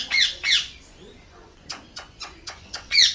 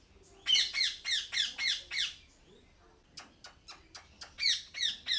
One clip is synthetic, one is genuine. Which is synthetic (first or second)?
first